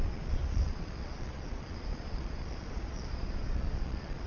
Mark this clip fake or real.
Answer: fake